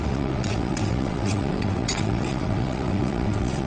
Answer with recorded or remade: remade